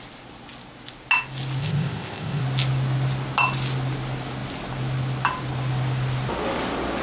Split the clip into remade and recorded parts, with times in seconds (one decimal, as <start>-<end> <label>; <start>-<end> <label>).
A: 0.0-1.6 recorded; 1.6-2.4 remade; 2.4-7.0 recorded